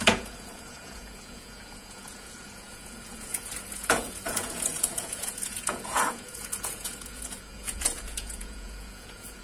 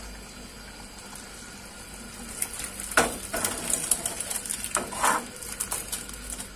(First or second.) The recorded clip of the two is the second